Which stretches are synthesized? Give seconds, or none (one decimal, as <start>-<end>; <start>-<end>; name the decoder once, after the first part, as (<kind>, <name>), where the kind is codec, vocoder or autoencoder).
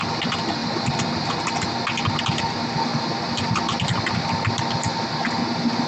none